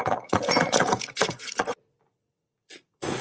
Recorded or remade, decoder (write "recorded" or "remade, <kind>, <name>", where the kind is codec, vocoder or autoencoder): remade, vocoder, Vocos